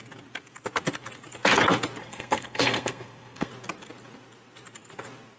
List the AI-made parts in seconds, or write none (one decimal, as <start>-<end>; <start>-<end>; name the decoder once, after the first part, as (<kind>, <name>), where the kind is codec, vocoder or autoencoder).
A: 2.0-3.5 (codec, SNAC)